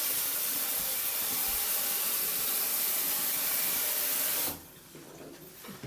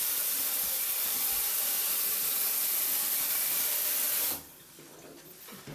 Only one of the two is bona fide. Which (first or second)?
second